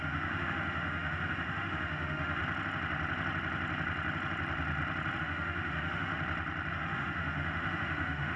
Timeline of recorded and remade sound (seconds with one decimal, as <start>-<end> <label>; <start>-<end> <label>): 0.0-2.4 remade; 2.4-5.2 recorded; 5.2-6.1 remade; 6.1-6.7 recorded; 6.7-8.4 remade